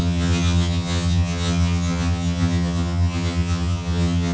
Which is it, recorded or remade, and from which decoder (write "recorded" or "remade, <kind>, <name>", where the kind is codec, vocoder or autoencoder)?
remade, vocoder, HiFi-GAN